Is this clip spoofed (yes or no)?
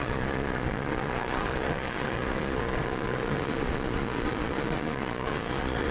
yes